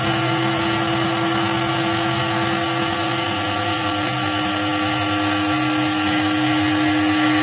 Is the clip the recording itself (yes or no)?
yes